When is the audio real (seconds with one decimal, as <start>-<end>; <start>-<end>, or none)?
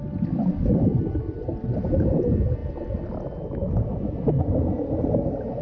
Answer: 0.0-5.6